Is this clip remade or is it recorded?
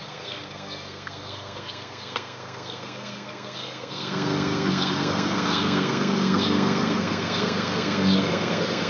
remade